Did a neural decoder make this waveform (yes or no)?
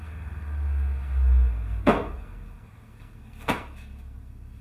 yes